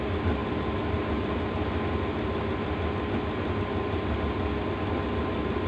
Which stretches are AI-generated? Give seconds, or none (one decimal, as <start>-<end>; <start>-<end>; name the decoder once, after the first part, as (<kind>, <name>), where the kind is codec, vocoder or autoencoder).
none